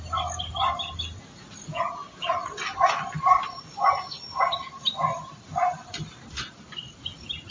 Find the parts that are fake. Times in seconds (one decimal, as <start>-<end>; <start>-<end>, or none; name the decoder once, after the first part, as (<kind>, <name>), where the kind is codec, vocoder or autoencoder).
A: none